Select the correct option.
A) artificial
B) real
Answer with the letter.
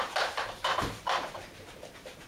A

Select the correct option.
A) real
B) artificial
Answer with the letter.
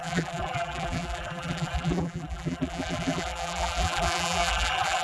B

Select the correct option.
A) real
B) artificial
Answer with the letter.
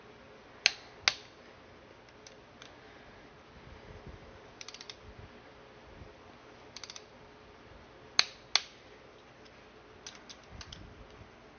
A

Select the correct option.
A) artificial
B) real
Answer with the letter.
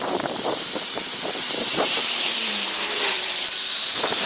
A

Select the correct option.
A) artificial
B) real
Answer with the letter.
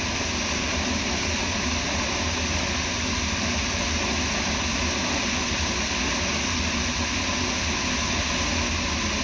B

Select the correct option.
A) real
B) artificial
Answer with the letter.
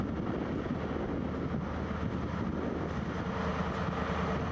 A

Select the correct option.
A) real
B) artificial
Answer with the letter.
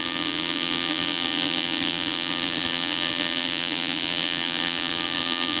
B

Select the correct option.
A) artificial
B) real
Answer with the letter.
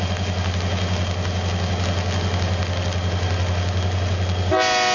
B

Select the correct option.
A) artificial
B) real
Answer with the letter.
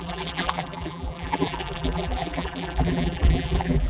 A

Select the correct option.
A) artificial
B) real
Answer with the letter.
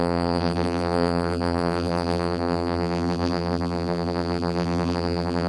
A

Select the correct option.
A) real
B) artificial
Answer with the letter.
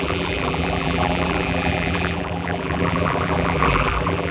B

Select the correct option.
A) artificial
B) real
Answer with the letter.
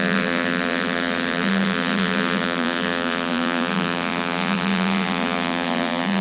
A